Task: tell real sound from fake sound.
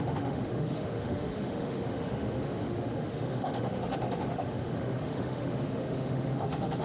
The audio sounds fake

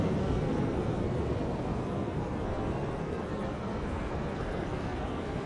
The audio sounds fake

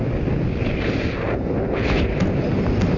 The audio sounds real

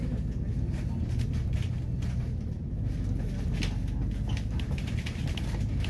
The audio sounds real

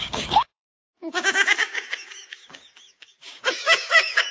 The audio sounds fake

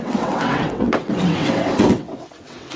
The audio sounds fake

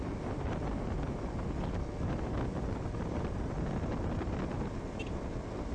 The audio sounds real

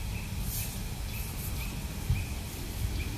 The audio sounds real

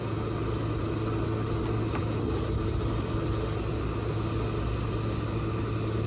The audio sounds real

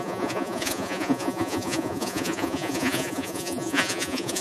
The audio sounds fake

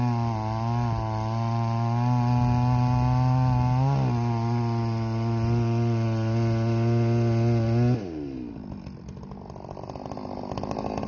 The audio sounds real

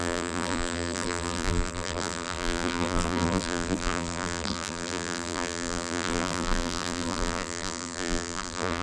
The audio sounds fake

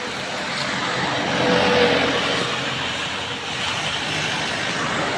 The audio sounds real